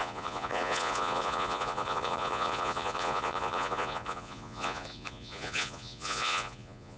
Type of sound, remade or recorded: remade